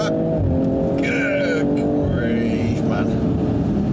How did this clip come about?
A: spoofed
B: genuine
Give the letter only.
B